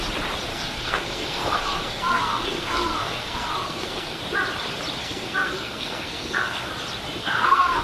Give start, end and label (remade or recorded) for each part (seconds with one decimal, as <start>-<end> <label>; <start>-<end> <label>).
0.0-0.5 recorded; 0.5-4.2 remade; 4.2-5.0 recorded; 5.0-6.7 remade; 6.7-7.2 recorded; 7.2-7.8 remade